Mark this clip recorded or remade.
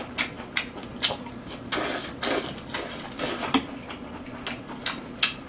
recorded